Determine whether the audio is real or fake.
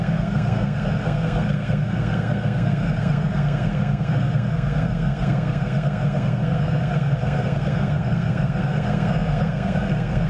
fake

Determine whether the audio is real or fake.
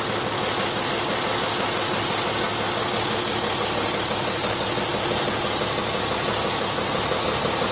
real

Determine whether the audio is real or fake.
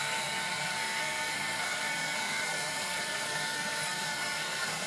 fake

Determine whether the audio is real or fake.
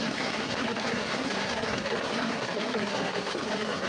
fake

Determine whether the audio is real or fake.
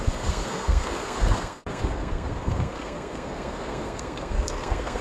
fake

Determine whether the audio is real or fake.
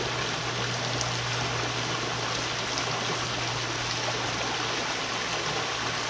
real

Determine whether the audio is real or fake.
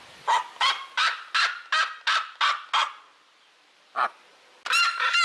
real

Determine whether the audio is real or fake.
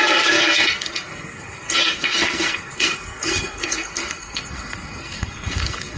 fake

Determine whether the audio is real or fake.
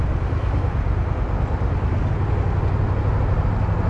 real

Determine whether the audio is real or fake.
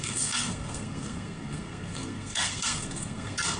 fake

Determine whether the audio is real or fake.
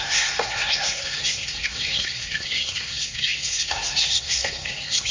fake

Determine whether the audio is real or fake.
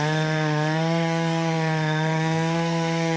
fake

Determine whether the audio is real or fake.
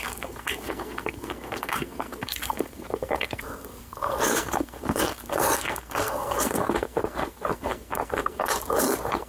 fake